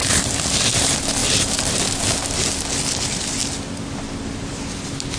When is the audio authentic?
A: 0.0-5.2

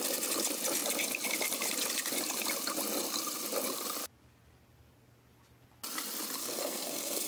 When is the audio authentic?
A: 0.0-6.4

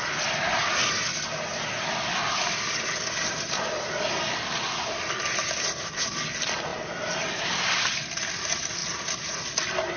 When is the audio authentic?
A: 0.0-10.0

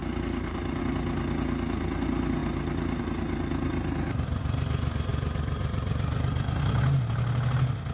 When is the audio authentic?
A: 0.8-7.9

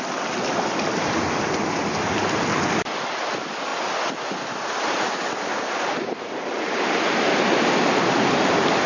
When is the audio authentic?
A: 0.0-8.9

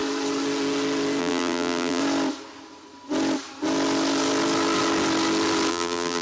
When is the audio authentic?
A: 0.0-1.2; 2.0-5.7